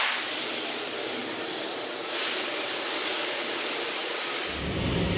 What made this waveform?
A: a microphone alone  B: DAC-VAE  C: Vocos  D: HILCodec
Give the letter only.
A